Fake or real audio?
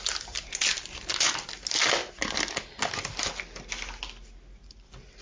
real